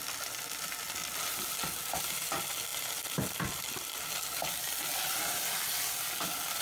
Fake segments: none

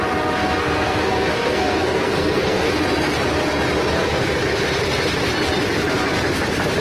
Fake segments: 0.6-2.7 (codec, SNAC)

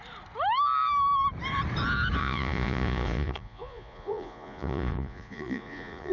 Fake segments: 2.2-6.1 (vocoder, Vocos)